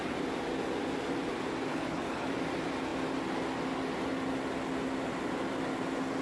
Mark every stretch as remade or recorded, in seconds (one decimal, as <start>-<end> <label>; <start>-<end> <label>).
0.0-1.7 recorded; 1.7-2.3 remade; 2.3-6.2 recorded